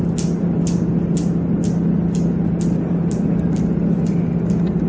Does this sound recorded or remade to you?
recorded